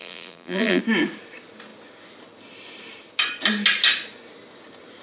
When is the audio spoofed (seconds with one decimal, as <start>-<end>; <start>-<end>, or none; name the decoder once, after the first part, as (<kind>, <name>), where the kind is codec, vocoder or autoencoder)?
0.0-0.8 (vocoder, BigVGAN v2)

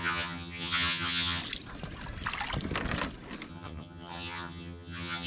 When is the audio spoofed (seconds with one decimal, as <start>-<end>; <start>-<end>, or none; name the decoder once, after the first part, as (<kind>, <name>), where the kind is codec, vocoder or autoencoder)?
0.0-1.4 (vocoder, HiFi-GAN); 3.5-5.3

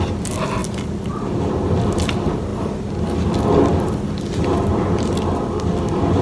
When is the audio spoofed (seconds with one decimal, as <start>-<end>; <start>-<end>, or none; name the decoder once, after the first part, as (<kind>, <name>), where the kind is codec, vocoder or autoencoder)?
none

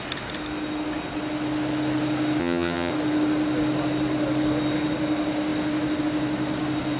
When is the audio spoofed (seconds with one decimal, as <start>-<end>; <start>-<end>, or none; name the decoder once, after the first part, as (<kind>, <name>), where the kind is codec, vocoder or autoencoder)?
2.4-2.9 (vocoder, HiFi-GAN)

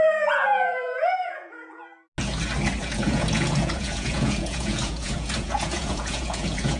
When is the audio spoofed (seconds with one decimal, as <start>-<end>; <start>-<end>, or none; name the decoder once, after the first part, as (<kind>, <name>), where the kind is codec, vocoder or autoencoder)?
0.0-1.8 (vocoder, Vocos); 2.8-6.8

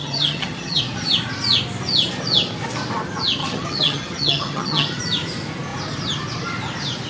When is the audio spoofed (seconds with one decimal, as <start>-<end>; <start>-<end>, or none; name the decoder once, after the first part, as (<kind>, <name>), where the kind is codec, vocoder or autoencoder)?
0.0-0.8 (vocoder, HiFi-GAN); 3.4-5.0

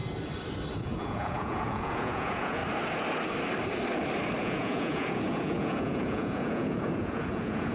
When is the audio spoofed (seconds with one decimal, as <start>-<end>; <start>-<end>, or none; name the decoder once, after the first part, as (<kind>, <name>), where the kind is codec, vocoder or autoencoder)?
0.8-2.6 (vocoder, Vocos); 4.4-7.7